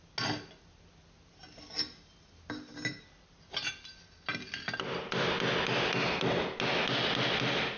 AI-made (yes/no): no